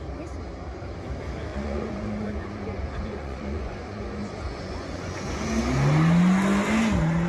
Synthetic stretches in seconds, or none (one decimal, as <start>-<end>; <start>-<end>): 1.5-5.4